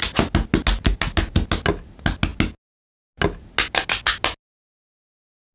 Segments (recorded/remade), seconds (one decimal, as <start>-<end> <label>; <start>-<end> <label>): 0.0-5.5 recorded